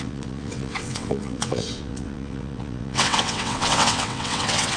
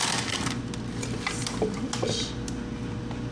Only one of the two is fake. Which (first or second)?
first